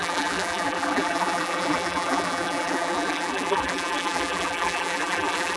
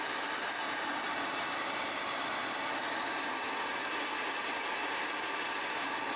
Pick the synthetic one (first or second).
first